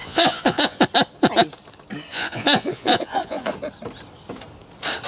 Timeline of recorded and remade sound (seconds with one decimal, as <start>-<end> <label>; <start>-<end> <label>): 0.0-0.8 remade; 0.8-2.1 recorded; 2.1-3.5 remade; 3.5-5.1 recorded